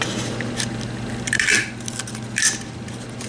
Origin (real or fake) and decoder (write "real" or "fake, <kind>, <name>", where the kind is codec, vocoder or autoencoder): real